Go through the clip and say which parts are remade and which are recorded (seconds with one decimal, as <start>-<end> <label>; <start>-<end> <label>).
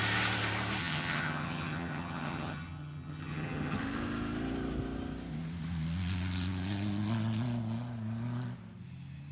0.0-0.8 recorded; 0.8-3.8 remade; 3.8-9.3 recorded